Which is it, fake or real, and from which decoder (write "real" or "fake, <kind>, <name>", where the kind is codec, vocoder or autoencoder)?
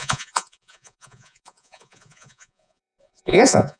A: fake, vocoder, Vocos